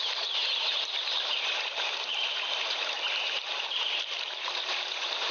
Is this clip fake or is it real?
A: fake